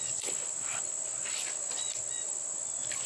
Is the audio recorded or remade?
recorded